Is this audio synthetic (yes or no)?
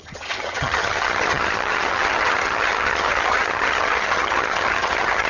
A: yes